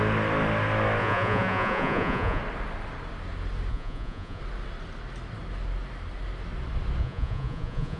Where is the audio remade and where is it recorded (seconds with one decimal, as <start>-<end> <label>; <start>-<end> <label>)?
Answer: 0.0-1.0 recorded; 1.0-2.4 remade; 2.4-3.7 recorded; 3.7-4.4 remade; 4.4-7.0 recorded; 7.0-8.0 remade